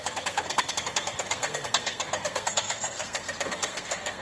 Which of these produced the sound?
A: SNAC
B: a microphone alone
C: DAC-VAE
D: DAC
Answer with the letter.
A